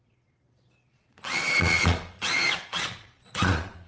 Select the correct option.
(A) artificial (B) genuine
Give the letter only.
A